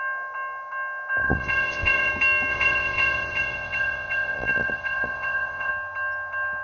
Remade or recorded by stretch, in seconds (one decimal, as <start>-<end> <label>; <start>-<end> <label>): 0.0-1.2 recorded; 1.2-2.1 remade; 2.1-2.5 recorded; 2.5-5.7 remade; 5.7-6.6 recorded